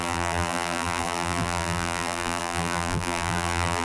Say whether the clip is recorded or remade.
remade